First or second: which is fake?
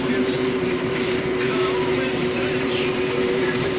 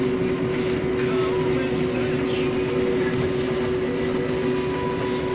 first